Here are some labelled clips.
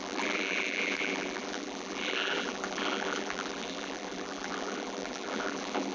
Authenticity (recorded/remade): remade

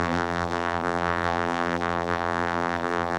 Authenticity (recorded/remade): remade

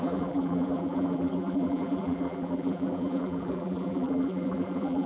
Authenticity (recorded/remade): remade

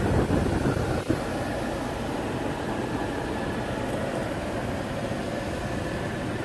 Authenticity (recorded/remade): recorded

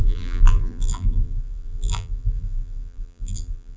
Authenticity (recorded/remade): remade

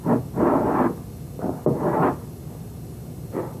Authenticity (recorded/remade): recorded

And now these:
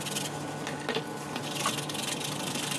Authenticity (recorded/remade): recorded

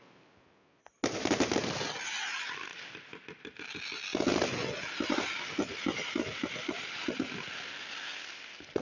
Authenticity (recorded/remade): recorded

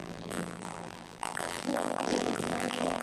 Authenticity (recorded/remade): remade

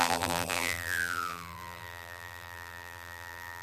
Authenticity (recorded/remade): remade